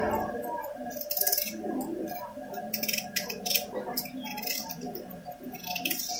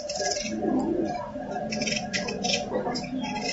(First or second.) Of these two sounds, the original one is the first